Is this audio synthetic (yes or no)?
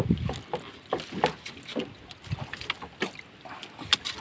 no